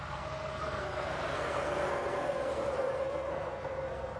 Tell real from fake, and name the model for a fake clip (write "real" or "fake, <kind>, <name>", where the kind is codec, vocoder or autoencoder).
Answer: fake, codec, SNAC